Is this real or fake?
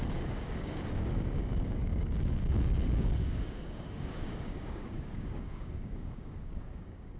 fake